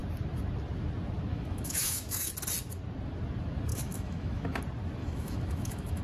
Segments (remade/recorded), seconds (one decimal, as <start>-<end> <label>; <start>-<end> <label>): 0.0-1.3 recorded; 1.3-2.3 remade; 2.3-3.7 recorded; 3.7-4.6 remade; 4.6-5.0 recorded; 5.0-6.0 remade